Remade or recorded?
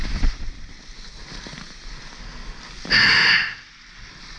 recorded